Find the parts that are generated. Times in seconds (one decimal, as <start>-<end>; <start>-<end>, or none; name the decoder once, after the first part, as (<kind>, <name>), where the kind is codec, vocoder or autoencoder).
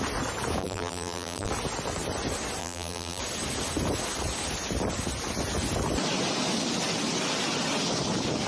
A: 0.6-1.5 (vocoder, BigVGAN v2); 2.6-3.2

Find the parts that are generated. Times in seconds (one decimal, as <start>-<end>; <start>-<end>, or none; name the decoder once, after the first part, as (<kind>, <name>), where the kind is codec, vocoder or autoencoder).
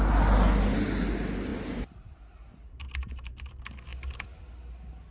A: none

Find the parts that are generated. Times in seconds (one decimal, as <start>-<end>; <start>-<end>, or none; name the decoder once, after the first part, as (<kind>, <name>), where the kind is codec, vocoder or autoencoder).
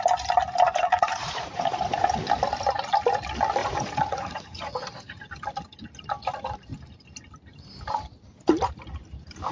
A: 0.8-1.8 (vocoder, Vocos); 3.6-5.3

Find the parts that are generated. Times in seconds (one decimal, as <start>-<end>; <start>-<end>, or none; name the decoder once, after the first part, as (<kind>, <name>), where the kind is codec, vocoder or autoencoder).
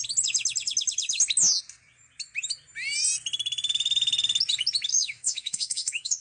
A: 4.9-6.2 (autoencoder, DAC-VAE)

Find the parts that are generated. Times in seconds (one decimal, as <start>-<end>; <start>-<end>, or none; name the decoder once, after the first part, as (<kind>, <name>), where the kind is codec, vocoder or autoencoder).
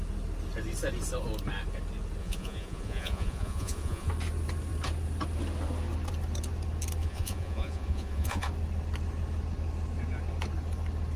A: 2.2-4.1 (vocoder, Vocos); 7.0-8.5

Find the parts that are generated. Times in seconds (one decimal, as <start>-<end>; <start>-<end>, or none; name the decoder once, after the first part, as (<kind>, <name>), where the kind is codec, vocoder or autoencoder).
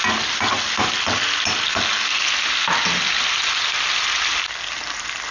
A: none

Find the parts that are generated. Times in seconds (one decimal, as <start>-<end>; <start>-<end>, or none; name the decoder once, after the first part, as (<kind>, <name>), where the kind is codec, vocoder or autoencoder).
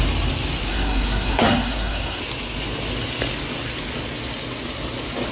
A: 0.7-2.2 (codec, SNAC)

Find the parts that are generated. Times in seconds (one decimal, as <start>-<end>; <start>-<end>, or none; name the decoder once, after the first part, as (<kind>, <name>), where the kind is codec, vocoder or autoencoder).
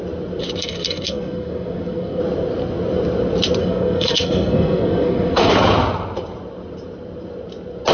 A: 0.6-2.2 (codec, SNAC); 3.6-5.5